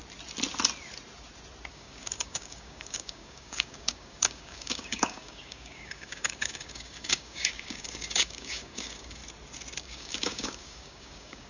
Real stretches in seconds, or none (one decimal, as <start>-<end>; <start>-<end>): 0.0-1.7; 9.2-9.8

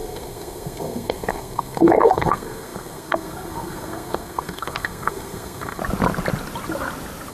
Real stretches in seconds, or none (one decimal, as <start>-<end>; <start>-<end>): 5.8-7.3